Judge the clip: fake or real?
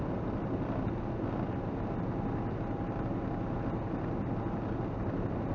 real